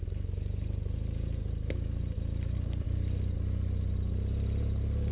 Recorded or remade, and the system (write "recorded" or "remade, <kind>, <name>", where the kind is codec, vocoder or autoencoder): recorded